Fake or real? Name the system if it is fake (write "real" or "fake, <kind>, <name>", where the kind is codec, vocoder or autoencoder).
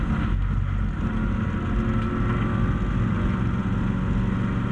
real